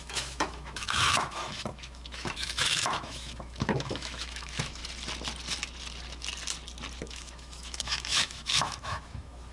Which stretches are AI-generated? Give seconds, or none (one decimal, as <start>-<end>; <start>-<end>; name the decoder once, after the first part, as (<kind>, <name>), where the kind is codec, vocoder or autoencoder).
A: 0.0-4.8 (autoencoder, DAC-VAE); 7.0-9.5